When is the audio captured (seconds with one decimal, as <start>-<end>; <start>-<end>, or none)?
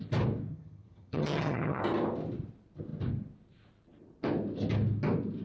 0.0-0.5; 1.8-5.4